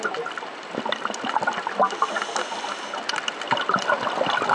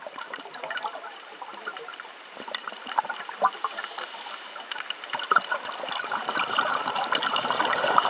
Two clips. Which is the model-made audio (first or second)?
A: second